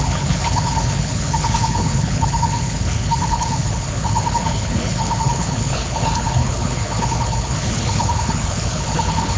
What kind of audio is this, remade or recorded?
remade